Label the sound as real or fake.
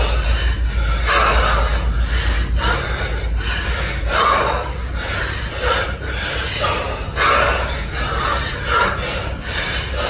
real